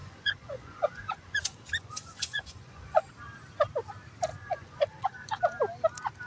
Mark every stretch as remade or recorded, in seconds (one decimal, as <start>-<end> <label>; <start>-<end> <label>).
0.0-3.1 remade; 3.1-4.3 recorded; 4.3-5.4 remade; 5.4-6.3 recorded

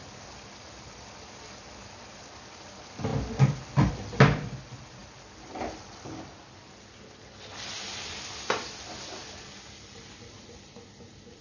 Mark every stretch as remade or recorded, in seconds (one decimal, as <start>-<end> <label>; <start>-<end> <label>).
0.0-11.4 recorded

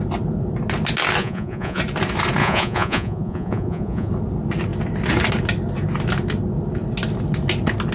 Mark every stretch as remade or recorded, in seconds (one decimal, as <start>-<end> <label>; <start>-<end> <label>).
0.0-1.2 recorded; 1.2-1.8 remade; 1.8-2.4 recorded; 2.4-4.1 remade; 4.1-7.9 recorded

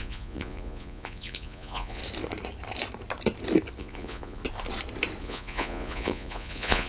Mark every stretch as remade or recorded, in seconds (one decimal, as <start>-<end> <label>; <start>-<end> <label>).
0.0-2.0 remade; 2.0-3.8 recorded; 3.8-4.4 remade; 4.4-5.2 recorded; 5.2-6.9 remade

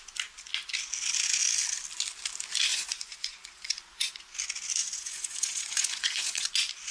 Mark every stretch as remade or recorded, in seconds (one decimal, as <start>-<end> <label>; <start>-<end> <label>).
0.0-2.7 recorded; 2.7-4.1 remade; 4.1-4.8 recorded; 4.8-6.5 remade; 6.5-6.9 recorded